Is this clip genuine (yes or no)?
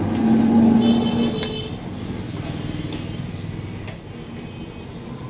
yes